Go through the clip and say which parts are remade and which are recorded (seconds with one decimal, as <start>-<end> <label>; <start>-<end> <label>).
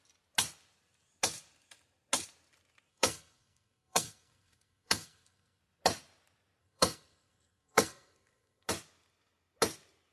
0.0-2.9 recorded; 2.9-5.6 remade; 5.6-6.6 recorded; 6.6-8.7 remade; 8.7-10.1 recorded